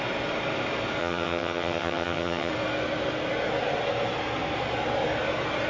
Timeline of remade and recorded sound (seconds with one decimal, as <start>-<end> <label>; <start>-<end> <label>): 0.0-1.0 recorded; 1.0-2.5 remade; 2.5-5.7 recorded